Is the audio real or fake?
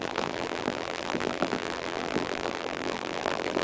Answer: fake